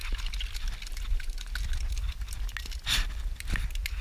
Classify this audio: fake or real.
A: real